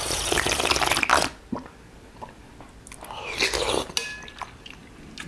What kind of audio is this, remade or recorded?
recorded